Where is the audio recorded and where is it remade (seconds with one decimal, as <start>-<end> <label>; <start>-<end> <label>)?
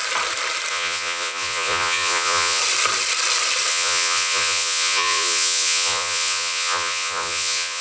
0.0-0.7 recorded; 0.7-2.6 remade; 2.6-3.7 recorded; 3.7-7.8 remade